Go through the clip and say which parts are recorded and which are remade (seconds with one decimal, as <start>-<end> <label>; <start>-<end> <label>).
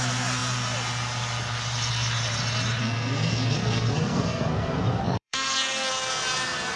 0.0-2.8 recorded; 2.8-5.9 remade; 5.9-6.8 recorded